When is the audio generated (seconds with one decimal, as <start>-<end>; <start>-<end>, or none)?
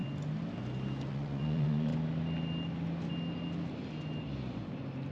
1.1-1.9